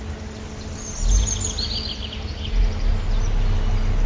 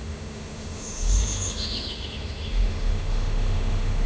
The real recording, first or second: first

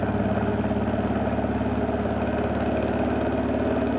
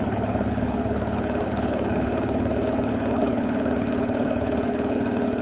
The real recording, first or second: first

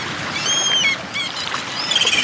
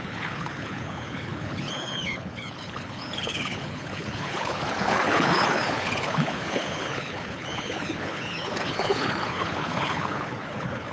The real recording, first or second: first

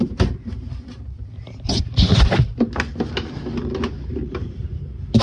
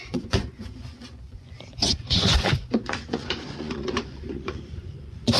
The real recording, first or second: first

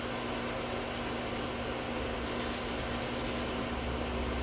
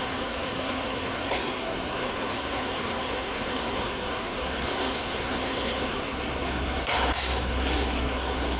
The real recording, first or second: first